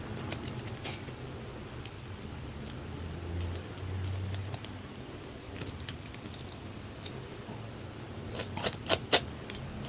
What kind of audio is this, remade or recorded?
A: recorded